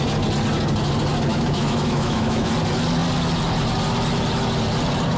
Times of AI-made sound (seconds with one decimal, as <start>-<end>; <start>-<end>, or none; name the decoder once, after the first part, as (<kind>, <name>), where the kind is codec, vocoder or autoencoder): 1.3-2.5 (autoencoder, DAC-VAE)